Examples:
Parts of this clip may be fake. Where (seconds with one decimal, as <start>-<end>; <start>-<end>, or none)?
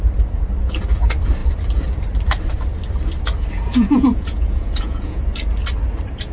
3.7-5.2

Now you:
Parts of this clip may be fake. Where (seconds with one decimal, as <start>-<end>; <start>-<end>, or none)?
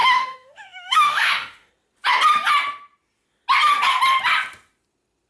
0.0-1.7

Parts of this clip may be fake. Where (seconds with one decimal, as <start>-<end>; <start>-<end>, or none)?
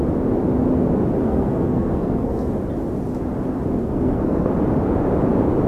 1.2-2.5; 3.8-4.5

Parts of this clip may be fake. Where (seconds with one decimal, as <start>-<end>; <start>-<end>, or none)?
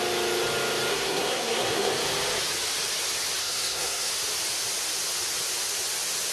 0.9-1.9; 3.4-4.1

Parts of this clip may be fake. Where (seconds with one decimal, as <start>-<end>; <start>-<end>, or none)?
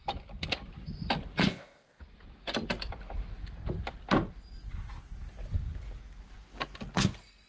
1.5-2.0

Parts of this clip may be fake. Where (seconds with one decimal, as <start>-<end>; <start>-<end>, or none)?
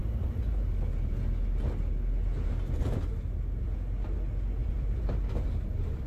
4.6-6.1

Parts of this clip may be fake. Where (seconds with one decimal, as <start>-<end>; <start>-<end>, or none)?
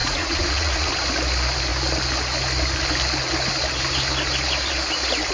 0.0-0.9